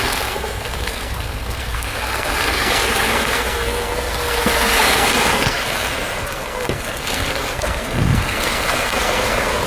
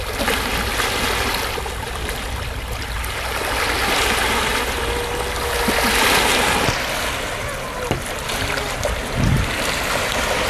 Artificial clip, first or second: first